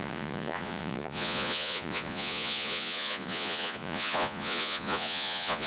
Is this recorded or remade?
remade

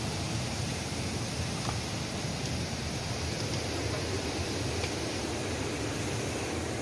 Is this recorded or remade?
recorded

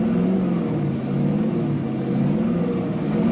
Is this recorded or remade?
recorded